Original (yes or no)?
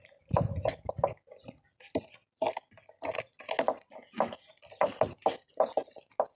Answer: yes